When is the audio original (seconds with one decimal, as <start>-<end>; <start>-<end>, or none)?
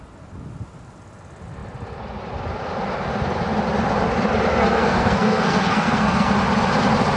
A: 0.0-4.5; 6.3-7.2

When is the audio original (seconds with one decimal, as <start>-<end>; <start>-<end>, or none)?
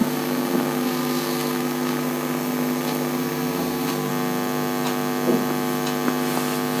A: 4.1-6.8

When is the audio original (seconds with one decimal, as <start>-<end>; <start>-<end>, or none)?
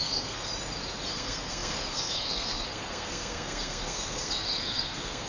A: 0.5-1.1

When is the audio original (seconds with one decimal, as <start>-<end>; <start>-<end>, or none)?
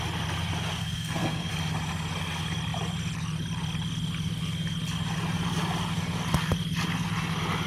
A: 0.0-0.8; 1.5-7.7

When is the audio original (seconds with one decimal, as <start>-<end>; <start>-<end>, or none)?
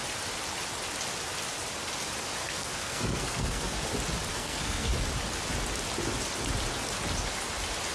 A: 0.0-2.4; 3.9-4.3; 4.9-7.9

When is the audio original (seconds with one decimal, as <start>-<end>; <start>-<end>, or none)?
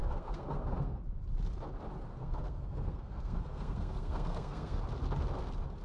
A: 1.0-2.1; 4.8-5.8